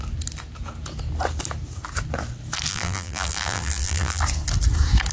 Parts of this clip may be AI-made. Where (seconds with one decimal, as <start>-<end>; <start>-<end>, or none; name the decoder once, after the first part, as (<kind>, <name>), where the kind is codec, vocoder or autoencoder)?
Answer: 2.7-4.2 (vocoder, BigVGAN v2)